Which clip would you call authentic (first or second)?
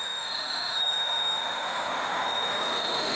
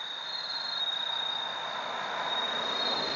second